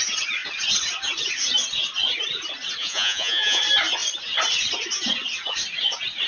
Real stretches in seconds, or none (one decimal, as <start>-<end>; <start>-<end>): 0.0-2.8; 3.6-6.3